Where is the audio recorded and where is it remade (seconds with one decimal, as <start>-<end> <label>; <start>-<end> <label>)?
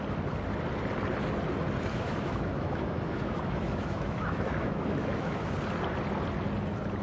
0.0-1.9 recorded; 1.9-5.5 remade; 5.5-7.0 recorded